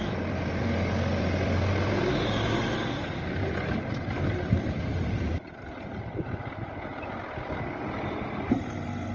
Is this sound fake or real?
real